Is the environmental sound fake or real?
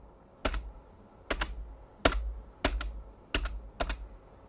real